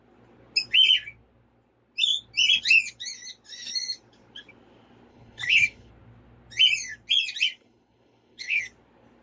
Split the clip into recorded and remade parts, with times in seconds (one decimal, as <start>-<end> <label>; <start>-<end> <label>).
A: 0.0-5.1 recorded; 5.1-5.9 remade; 5.9-7.6 recorded; 7.6-8.6 remade; 8.6-9.2 recorded